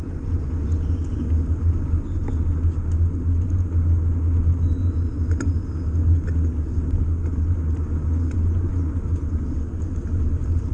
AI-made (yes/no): no